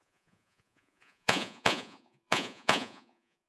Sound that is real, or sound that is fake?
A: fake